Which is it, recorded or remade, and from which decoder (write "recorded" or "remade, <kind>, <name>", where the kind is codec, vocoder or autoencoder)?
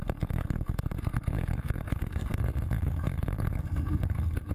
remade, codec, SNAC